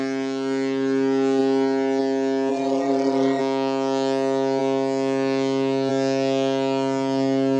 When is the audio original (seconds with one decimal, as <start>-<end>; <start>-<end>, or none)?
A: 0.0-2.5; 3.4-7.6